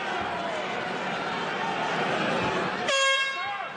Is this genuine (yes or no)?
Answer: yes